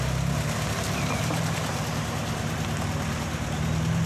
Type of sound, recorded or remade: recorded